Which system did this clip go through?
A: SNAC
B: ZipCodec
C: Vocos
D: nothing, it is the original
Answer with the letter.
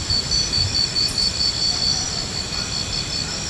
D